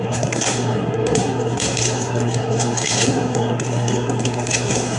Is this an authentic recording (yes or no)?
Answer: no